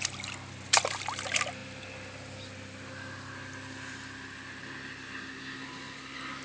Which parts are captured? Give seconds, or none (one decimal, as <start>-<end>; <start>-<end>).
0.0-6.4